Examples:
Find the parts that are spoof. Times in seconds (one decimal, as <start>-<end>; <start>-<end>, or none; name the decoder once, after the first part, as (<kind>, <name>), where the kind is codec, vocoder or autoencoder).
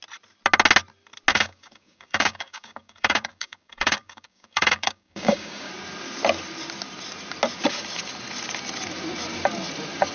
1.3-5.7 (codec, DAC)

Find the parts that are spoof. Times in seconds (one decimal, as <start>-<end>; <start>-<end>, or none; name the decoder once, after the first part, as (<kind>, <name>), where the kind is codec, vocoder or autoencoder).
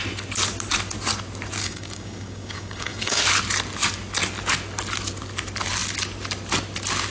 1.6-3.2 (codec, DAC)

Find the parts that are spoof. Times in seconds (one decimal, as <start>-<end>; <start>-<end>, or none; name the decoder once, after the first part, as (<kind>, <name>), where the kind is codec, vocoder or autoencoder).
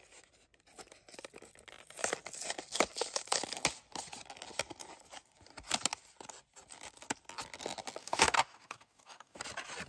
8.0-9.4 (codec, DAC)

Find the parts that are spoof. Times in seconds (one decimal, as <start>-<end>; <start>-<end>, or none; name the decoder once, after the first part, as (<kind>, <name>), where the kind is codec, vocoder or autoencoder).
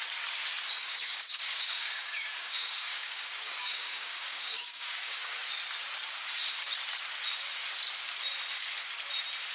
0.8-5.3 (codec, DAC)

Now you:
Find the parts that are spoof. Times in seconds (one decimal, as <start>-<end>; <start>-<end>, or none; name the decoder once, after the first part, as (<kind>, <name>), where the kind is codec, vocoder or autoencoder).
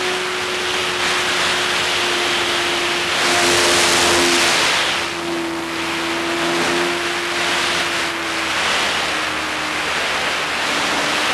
none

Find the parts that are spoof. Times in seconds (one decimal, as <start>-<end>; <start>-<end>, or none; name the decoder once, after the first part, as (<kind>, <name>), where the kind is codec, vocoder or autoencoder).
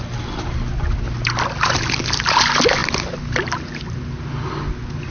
none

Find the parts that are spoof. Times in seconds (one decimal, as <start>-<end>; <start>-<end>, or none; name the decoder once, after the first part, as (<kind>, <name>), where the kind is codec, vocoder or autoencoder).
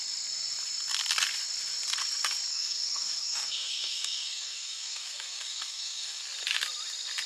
2.5-6.2 (codec, DAC)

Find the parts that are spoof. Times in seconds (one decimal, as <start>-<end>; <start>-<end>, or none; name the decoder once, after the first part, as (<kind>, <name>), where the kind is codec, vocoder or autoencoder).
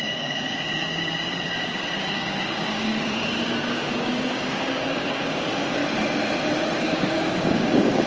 0.0-5.8 (codec, DAC); 6.8-8.1